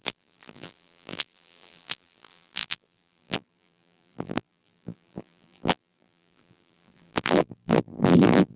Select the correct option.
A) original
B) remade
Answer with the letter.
B